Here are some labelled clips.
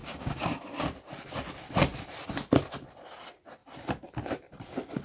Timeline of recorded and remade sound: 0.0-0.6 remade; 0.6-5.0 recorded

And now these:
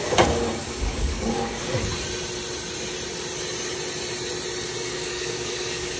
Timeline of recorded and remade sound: 0.0-1.9 remade; 1.9-4.9 recorded; 4.9-6.0 remade

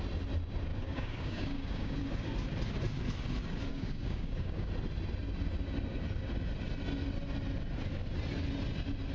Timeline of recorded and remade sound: 0.0-0.7 recorded; 0.7-2.0 remade; 2.0-3.7 recorded; 3.7-4.7 remade; 4.7-9.1 recorded